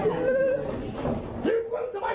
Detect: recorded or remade recorded